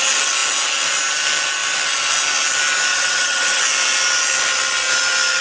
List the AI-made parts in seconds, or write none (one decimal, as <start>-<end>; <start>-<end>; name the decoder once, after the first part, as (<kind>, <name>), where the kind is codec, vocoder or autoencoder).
2.9-3.6 (vocoder, HiFi-GAN)